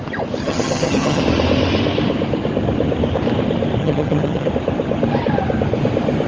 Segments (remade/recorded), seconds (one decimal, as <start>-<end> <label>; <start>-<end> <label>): 0.0-0.4 recorded; 0.4-1.2 remade; 1.2-3.8 recorded; 3.8-4.5 remade; 4.5-6.3 recorded